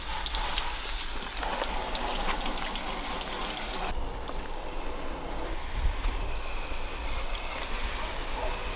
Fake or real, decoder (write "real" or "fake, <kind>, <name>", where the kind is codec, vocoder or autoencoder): real